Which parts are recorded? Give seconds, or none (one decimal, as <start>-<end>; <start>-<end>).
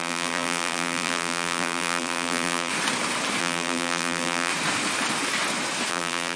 2.7-3.4; 4.5-5.9